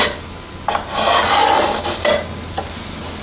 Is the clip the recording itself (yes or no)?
yes